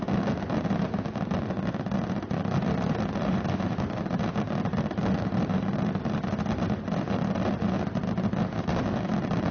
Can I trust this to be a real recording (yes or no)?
yes